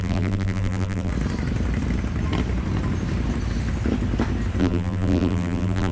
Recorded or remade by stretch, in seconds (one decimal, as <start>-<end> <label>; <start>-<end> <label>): 0.0-1.1 remade; 1.1-4.6 recorded; 4.6-5.9 remade